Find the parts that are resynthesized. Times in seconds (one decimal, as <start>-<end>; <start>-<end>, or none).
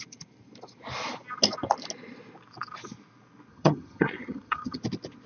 3.5-4.8